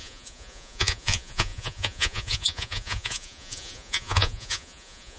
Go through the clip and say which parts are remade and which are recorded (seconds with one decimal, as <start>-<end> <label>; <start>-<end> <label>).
0.0-5.2 remade